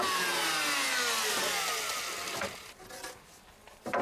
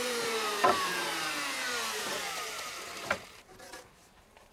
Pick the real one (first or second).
first